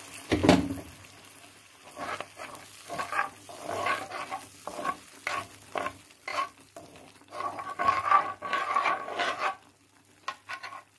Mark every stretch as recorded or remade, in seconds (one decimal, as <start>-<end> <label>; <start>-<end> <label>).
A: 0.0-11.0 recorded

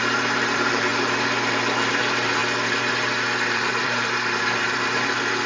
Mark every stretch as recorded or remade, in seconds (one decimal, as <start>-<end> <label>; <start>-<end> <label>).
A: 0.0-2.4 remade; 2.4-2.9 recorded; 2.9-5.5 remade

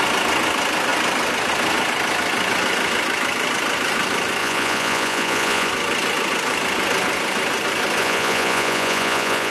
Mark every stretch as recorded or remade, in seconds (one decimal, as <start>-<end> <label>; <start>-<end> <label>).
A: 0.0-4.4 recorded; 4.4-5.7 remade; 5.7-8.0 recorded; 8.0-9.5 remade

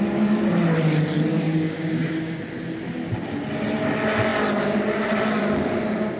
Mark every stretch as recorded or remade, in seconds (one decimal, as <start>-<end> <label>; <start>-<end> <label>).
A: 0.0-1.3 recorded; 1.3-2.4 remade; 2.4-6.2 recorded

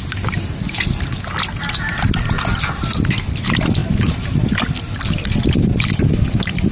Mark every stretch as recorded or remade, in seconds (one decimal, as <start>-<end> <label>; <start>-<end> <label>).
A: 0.0-6.7 recorded

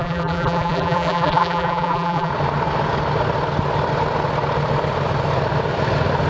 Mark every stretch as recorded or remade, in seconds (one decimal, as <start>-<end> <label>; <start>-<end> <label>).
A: 0.0-2.3 remade; 2.3-6.3 recorded